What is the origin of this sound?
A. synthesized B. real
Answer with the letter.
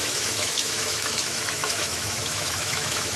A